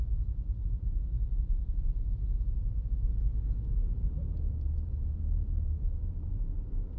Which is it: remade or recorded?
remade